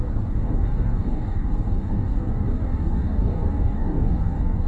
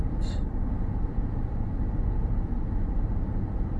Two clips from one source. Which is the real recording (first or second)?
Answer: second